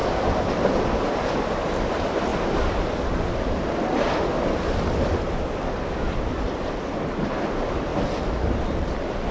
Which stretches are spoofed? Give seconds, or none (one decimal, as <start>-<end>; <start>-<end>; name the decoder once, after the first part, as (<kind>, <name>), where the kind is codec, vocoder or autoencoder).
0.0-2.3 (vocoder, BigVGAN v2); 6.3-7.9